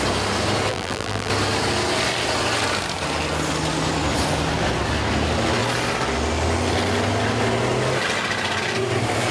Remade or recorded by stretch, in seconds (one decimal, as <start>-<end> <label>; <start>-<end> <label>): 0.0-0.7 recorded; 0.7-1.3 remade; 1.3-9.3 recorded